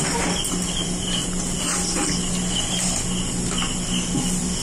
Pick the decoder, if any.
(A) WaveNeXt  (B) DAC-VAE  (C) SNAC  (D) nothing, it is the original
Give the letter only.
D